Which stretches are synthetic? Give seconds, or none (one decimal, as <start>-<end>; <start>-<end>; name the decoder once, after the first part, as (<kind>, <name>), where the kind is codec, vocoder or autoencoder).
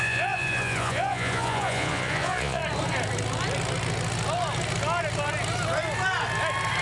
0.0-2.6 (vocoder, Vocos)